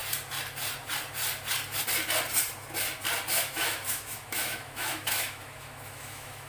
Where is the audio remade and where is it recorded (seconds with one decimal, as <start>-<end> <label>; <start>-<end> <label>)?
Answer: 0.0-3.3 recorded; 3.3-6.5 remade